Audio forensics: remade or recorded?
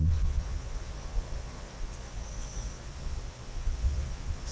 remade